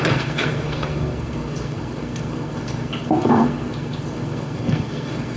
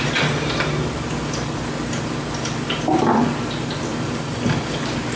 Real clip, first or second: second